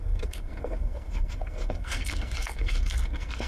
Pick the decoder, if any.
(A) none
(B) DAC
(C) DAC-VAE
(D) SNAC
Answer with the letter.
D